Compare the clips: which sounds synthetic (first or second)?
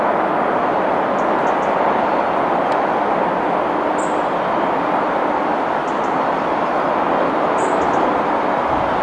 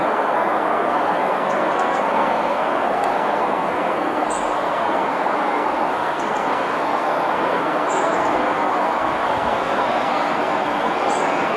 second